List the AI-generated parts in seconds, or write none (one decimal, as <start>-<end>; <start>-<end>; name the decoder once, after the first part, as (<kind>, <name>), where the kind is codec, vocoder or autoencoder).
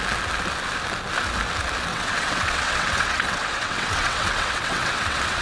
1.9-5.4 (vocoder, WaveNeXt)